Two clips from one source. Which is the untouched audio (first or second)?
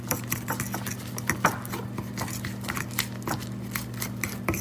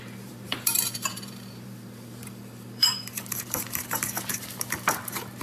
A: first